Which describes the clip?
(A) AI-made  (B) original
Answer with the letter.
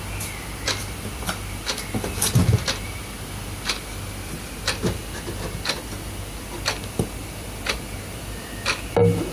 B